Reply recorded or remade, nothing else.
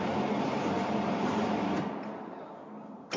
recorded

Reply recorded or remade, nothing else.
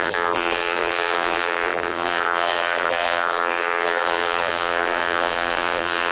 remade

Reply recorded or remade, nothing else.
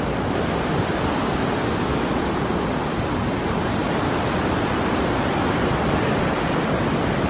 recorded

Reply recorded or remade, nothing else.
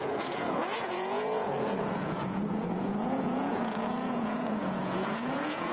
remade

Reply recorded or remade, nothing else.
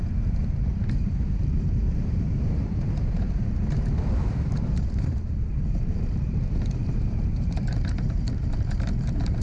remade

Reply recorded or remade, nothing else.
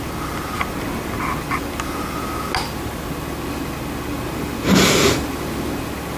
recorded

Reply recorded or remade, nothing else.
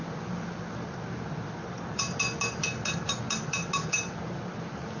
recorded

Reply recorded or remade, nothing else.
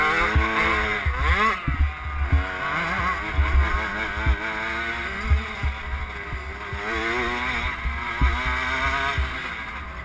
recorded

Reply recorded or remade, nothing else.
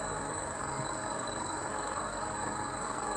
remade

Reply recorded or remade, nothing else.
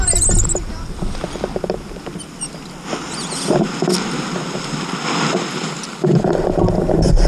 recorded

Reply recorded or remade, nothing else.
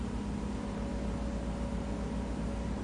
recorded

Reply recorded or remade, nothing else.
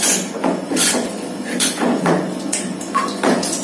remade